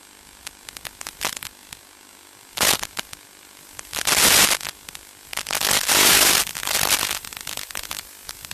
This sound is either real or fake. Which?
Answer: real